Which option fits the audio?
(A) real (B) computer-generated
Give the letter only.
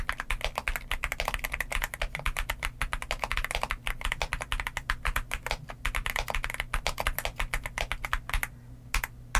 A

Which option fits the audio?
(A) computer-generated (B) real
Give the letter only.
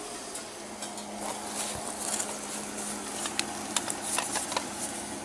B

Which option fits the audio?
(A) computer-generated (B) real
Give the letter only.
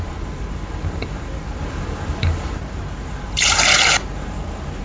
A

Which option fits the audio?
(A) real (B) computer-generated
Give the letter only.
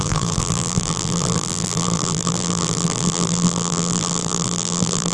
B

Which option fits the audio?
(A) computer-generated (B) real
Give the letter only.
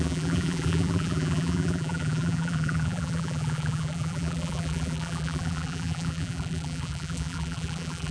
A